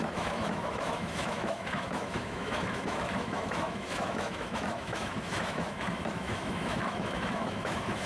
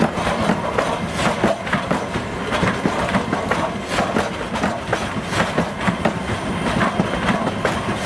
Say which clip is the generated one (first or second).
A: first